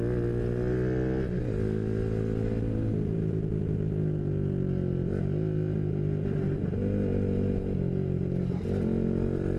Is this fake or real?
real